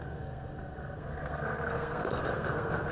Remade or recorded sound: remade